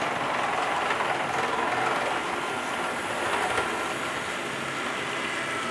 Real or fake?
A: real